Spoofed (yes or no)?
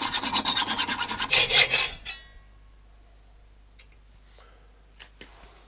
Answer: no